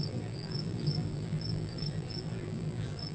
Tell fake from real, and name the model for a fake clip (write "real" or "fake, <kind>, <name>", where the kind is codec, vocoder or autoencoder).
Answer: fake, vocoder, BigVGAN v2